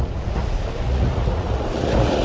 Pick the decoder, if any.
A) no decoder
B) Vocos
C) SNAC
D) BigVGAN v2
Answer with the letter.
B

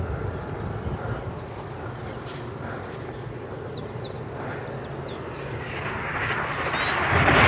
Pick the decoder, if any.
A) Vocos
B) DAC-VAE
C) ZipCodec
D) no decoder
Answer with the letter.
D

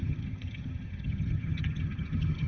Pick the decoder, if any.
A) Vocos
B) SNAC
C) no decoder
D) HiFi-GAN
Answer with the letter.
D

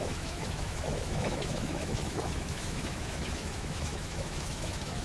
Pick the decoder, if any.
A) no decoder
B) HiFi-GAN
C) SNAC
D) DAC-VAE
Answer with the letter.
D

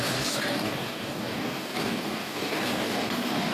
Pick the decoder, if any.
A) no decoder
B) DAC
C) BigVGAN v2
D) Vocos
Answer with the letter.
B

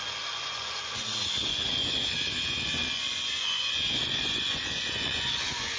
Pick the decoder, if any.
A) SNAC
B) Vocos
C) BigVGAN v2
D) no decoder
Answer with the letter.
B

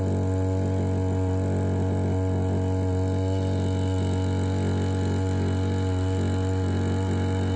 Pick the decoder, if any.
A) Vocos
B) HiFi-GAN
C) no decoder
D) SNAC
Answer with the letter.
C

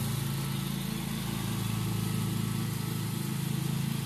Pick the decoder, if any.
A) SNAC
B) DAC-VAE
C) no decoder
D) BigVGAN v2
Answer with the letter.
C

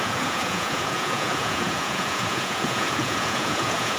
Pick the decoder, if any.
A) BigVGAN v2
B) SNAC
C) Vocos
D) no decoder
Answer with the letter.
C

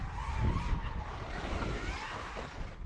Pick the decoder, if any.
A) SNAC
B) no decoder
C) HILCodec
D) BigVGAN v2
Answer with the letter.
B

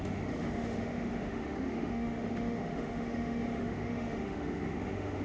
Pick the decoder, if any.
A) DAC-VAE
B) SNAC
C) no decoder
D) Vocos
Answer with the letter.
A